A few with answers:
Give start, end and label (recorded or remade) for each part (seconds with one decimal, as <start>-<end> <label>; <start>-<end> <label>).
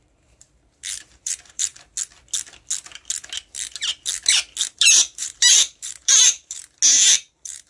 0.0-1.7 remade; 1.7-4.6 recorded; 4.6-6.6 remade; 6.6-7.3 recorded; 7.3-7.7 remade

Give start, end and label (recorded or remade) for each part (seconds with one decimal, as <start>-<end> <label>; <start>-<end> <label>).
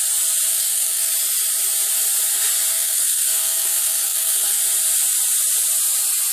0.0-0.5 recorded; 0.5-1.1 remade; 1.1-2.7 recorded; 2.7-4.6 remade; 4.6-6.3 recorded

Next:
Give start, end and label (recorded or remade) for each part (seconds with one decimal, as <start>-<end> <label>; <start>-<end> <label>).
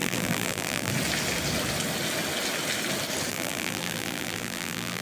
0.0-0.9 remade; 0.9-3.3 recorded; 3.3-5.0 remade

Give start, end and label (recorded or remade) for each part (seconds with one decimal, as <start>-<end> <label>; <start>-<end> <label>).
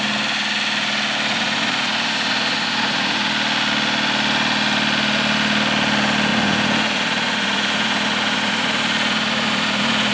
0.0-1.3 recorded; 1.3-3.3 remade; 3.3-6.3 recorded; 6.3-10.1 remade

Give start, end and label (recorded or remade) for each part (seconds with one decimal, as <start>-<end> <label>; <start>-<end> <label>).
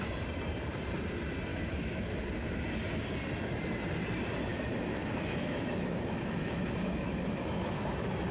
0.0-1.5 recorded; 1.5-2.2 remade; 2.2-4.5 recorded; 4.5-7.7 remade; 7.7-8.3 recorded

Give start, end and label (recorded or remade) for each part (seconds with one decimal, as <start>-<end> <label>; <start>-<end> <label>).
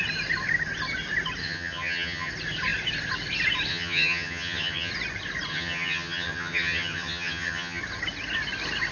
0.0-1.4 recorded; 1.4-2.3 remade; 2.3-3.7 recorded; 3.7-4.9 remade; 4.9-5.5 recorded; 5.5-7.8 remade; 7.8-8.9 recorded